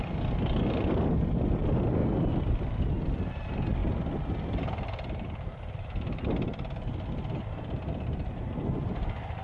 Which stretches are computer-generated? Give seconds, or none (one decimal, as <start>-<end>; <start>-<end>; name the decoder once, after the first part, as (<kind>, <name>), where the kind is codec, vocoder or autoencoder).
none